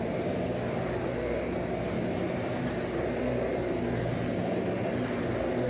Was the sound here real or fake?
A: real